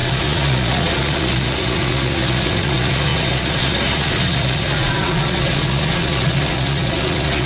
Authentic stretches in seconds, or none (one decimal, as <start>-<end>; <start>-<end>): none

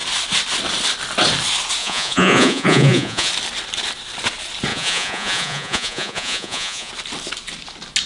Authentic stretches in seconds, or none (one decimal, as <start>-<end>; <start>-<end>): 0.0-1.8; 3.3-4.7; 6.9-8.1

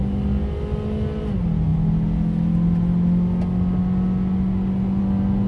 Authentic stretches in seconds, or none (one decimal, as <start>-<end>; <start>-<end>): 0.0-5.5

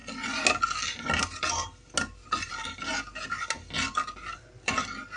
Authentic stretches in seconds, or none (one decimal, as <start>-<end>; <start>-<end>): 0.0-5.2

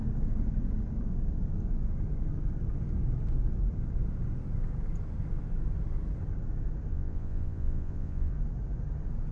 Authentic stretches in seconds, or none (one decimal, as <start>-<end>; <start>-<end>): 0.0-6.9; 8.3-9.3

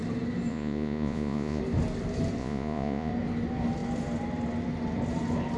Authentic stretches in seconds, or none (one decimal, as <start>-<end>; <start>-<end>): 0.0-0.5; 1.6-2.4; 3.1-5.6

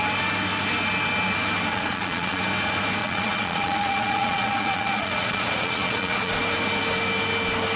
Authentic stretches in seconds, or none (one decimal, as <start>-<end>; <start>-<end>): 0.0-1.7; 2.4-3.0; 6.4-7.8